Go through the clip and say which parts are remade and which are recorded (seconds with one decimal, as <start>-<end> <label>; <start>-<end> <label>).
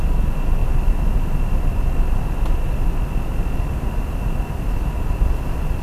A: 0.0-5.8 recorded